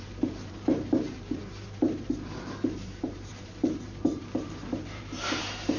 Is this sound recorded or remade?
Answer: remade